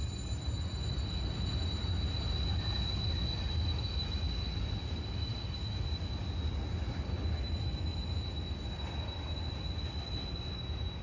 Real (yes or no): yes